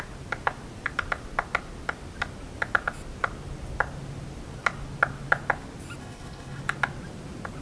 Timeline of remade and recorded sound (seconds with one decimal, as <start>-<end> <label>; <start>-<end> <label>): 0.0-6.0 recorded; 6.0-6.6 remade; 6.6-7.6 recorded